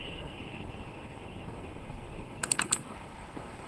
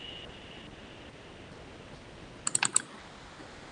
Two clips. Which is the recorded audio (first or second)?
second